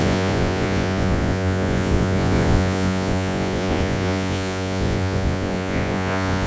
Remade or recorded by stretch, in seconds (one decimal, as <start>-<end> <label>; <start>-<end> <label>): 0.0-6.5 remade